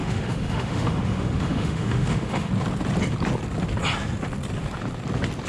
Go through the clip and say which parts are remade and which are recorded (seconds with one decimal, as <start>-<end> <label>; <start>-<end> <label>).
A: 0.0-2.5 remade; 2.5-5.5 recorded